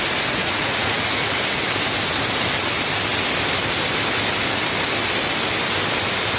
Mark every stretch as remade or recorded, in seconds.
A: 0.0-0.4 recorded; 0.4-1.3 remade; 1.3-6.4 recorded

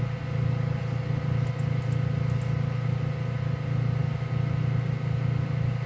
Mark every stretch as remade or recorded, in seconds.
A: 0.0-5.9 recorded

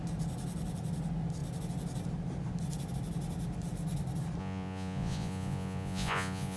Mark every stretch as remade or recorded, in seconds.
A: 0.0-4.4 recorded; 4.4-6.6 remade

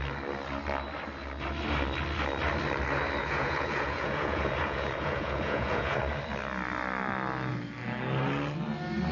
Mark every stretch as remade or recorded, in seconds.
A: 0.0-3.2 recorded; 3.2-6.0 remade; 6.0-9.1 recorded

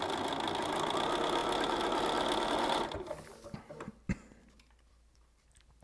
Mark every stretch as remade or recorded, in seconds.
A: 0.0-5.8 recorded